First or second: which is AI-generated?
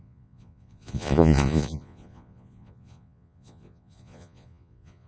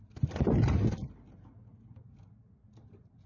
first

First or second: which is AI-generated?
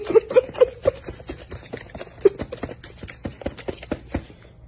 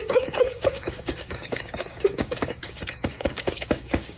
second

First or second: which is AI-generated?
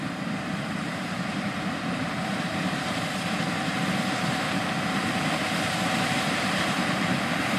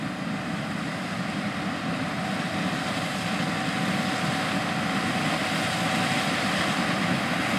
first